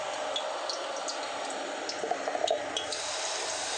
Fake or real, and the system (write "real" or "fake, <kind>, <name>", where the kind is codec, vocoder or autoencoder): real